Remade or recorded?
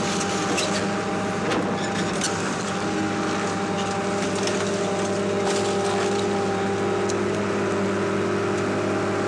recorded